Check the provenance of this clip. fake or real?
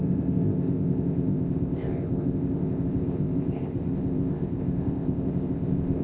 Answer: fake